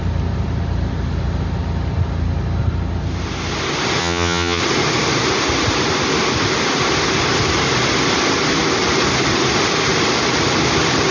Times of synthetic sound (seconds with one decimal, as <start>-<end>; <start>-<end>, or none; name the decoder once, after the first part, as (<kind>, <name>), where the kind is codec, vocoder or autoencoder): 4.0-4.6 (vocoder, HiFi-GAN)